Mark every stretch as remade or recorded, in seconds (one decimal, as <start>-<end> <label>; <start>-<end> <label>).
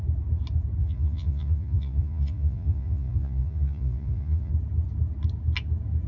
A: 0.0-0.8 recorded; 0.8-4.5 remade; 4.5-6.1 recorded